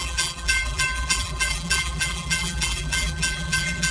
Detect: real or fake fake